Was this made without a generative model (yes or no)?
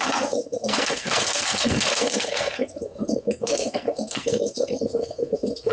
no